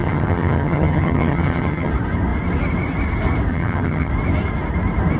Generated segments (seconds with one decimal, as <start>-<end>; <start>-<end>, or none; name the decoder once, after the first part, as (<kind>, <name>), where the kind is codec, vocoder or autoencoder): 0.0-1.9 (vocoder, HiFi-GAN); 3.5-4.1